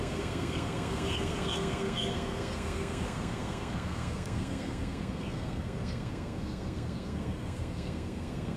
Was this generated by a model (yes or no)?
yes